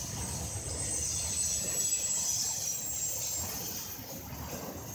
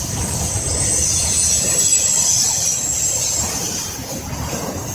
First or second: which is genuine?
first